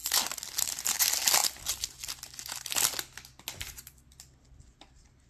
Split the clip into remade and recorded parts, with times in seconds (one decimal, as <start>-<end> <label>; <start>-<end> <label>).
0.0-5.3 recorded